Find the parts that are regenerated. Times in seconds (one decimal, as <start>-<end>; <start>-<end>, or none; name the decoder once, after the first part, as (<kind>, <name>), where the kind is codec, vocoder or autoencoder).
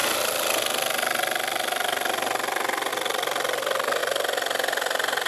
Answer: none